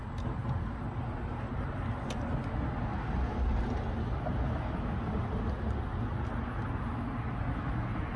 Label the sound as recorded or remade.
recorded